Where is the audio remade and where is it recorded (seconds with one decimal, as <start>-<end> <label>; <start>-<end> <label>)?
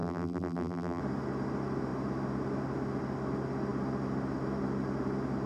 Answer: 0.0-1.0 remade; 1.0-5.5 recorded